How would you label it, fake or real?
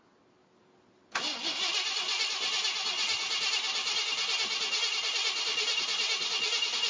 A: real